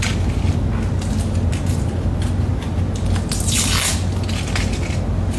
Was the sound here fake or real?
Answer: real